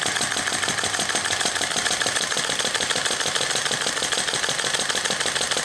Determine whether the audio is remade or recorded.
recorded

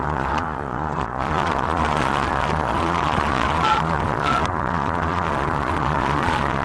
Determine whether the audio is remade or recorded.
remade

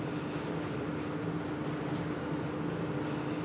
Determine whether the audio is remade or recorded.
recorded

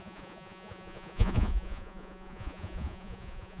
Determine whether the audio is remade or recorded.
remade